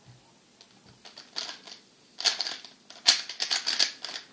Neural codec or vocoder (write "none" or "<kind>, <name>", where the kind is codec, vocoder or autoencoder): none